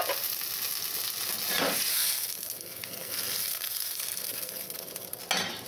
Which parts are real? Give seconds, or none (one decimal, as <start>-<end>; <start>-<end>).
0.0-1.9; 5.2-5.7